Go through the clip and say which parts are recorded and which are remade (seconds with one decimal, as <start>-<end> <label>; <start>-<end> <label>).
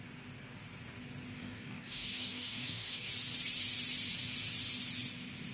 0.0-1.4 recorded; 1.4-3.1 remade; 3.1-5.5 recorded